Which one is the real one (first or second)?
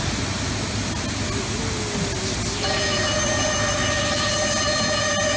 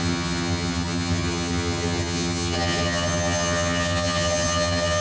first